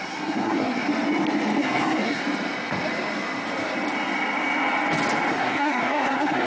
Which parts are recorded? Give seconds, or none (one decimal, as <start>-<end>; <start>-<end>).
0.9-1.6; 2.2-5.3